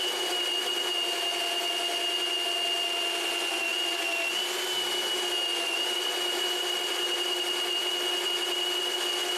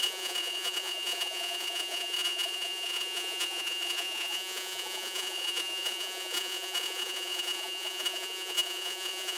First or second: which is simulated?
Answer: second